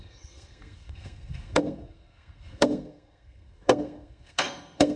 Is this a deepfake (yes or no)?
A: yes